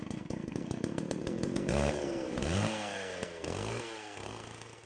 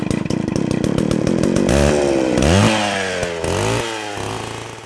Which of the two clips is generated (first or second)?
first